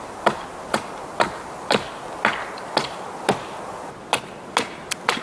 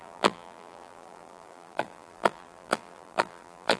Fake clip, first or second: second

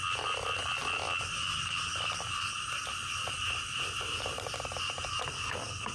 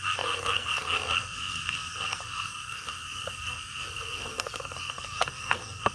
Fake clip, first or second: second